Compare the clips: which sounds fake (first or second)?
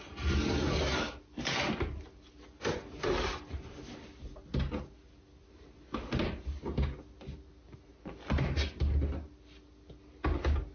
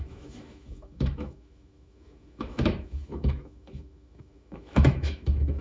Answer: second